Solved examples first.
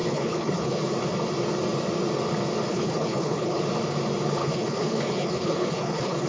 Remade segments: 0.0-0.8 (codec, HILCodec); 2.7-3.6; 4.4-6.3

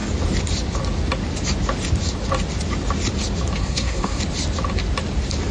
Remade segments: 3.6-4.2 (codec, SNAC)